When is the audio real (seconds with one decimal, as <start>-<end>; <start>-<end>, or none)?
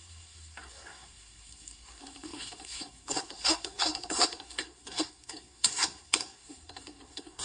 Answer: none